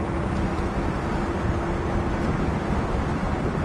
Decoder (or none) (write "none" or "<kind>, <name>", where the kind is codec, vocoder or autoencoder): none